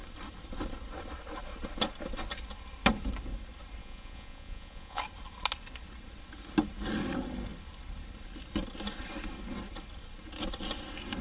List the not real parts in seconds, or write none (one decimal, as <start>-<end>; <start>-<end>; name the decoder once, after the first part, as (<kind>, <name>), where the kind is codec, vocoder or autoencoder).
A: 3.8-5.0 (vocoder, Vocos)